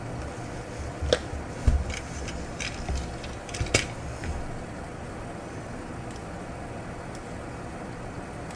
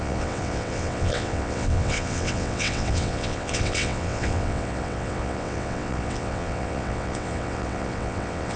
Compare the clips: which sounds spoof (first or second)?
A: second